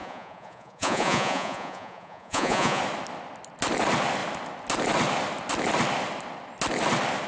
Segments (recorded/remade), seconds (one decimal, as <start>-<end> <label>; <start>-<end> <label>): 0.0-2.8 remade; 2.8-7.3 recorded

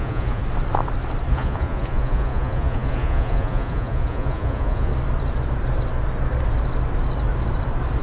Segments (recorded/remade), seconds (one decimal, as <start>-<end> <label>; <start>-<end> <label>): 0.0-0.4 remade; 0.4-1.3 recorded; 1.3-4.9 remade; 4.9-8.0 recorded

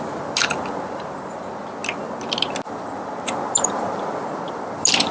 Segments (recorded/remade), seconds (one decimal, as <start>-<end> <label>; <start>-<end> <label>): 0.0-5.1 recorded

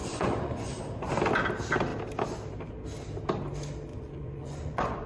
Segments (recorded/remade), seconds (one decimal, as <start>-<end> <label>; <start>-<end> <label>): 0.0-0.8 remade; 0.8-3.9 recorded; 3.9-5.1 remade

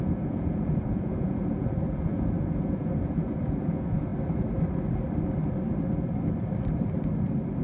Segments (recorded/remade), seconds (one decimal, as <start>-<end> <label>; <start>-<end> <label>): 0.0-4.1 remade; 4.1-7.6 recorded

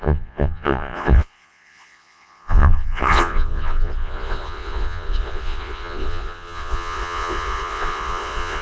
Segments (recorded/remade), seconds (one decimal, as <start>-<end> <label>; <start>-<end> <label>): 0.0-8.6 remade

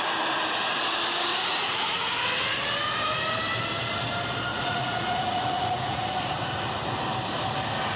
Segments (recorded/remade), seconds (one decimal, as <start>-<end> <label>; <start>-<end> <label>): 0.0-1.3 recorded; 1.3-2.2 remade; 2.2-4.5 recorded; 4.5-6.1 remade; 6.1-8.0 recorded

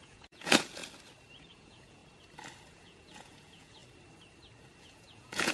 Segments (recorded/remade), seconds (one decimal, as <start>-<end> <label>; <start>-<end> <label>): 0.0-0.8 remade; 0.8-1.3 recorded; 1.3-2.0 remade; 2.0-2.7 recorded; 2.7-3.8 remade; 3.8-4.8 recorded; 4.8-5.5 remade